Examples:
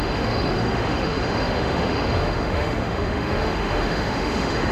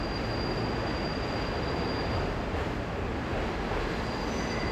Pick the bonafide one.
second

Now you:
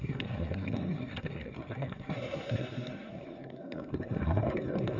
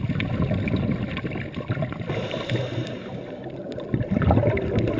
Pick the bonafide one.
second